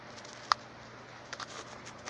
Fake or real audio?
real